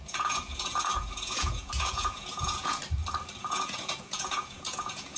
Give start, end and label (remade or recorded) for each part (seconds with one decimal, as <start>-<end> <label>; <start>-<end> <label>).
0.0-2.8 remade; 2.8-3.4 recorded; 3.4-5.2 remade